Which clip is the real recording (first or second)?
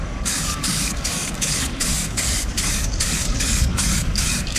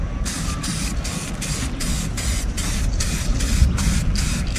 second